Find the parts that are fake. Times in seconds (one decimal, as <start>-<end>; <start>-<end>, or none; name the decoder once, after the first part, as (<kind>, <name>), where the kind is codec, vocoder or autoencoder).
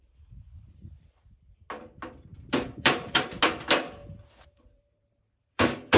2.3-3.4 (vocoder, BigVGAN v2); 4.0-6.0